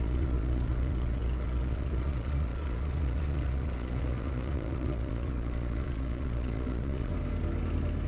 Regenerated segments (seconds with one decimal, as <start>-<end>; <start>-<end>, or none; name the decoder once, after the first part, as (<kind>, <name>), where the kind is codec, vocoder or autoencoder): 0.0-7.1 (vocoder, Vocos)